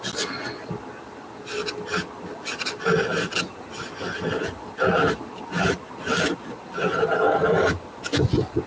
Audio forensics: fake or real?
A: real